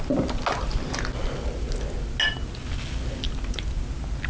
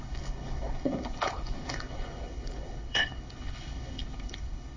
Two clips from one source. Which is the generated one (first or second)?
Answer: second